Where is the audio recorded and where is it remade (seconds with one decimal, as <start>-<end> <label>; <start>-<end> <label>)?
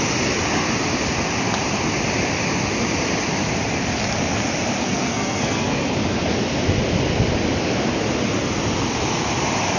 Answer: 0.0-4.8 recorded; 4.8-5.8 remade; 5.8-9.8 recorded